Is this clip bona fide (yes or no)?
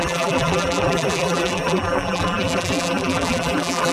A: no